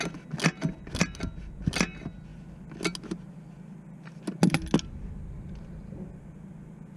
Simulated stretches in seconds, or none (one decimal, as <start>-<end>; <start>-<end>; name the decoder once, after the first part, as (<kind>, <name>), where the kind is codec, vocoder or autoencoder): none